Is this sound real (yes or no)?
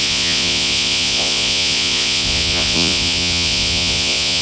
no